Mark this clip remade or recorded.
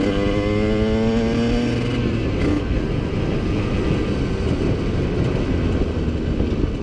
recorded